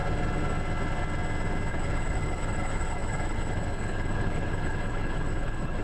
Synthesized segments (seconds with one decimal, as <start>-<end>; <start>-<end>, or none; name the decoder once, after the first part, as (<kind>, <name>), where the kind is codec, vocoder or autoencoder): 1.7-5.8 (codec, HILCodec)